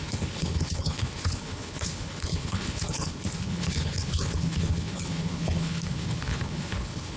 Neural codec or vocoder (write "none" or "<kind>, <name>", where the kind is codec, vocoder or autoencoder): codec, HILCodec